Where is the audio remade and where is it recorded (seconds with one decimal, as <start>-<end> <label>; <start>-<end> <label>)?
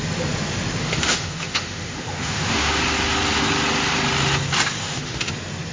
0.0-0.8 recorded; 0.8-2.7 remade; 2.7-4.8 recorded; 4.8-5.3 remade; 5.3-5.7 recorded